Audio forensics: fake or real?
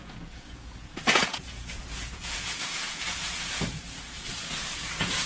fake